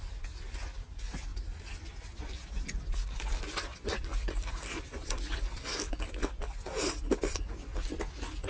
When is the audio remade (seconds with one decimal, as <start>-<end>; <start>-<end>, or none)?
none